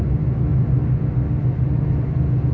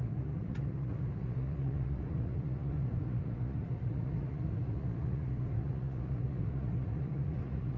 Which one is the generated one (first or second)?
second